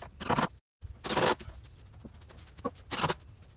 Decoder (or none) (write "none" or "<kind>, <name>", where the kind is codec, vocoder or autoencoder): none